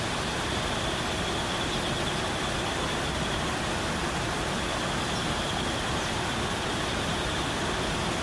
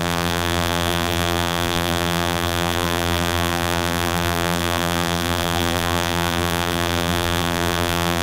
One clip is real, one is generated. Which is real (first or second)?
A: first